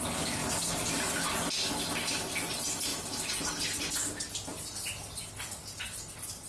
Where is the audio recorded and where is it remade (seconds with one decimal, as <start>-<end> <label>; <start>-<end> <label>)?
0.0-6.5 recorded